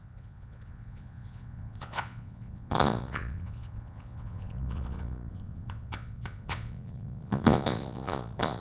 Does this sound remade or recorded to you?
remade